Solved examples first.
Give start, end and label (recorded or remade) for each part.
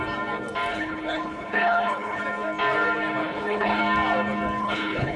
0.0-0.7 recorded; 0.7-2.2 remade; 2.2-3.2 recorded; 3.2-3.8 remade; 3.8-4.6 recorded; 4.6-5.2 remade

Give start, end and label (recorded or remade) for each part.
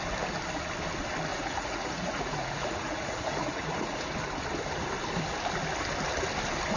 0.0-1.3 recorded; 1.3-4.0 remade; 4.0-6.8 recorded